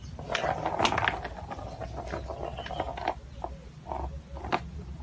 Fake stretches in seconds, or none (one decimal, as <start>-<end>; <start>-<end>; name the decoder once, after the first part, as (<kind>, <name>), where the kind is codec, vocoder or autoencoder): none